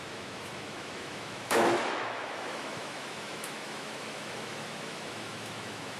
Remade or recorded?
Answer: remade